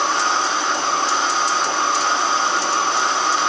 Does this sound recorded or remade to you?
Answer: recorded